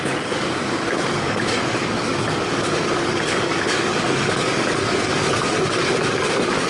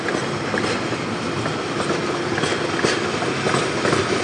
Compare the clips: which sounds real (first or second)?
second